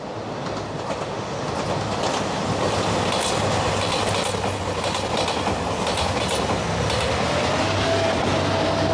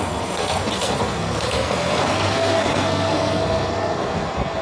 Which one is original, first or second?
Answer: first